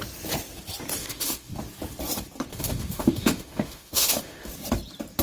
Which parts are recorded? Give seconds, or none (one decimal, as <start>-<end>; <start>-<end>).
0.0-1.0; 1.5-2.5; 4.5-5.2